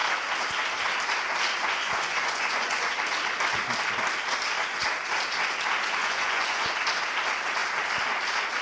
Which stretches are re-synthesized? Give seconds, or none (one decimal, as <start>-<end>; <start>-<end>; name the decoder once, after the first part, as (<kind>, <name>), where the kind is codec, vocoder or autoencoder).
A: 1.6-2.9 (vocoder, Vocos); 6.0-6.7